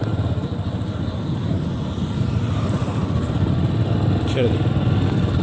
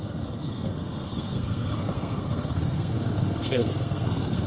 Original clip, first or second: first